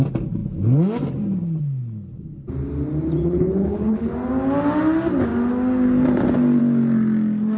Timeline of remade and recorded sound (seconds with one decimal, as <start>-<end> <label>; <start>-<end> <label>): 0.0-3.2 recorded; 3.2-4.1 remade; 4.1-7.6 recorded